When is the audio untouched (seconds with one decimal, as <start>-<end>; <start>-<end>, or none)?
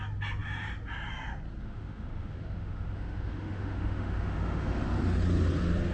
0.0-1.6; 4.8-5.9